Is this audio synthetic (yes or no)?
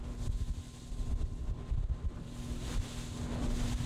no